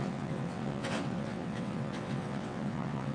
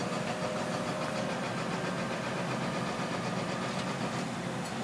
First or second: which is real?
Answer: second